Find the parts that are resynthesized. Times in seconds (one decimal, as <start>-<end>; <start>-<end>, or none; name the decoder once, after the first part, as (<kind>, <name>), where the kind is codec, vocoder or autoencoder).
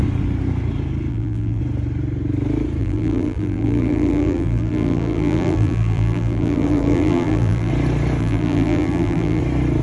1.1-1.6 (vocoder, BigVGAN v2); 2.8-7.7; 8.2-9.4